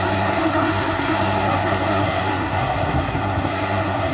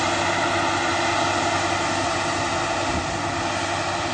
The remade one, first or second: first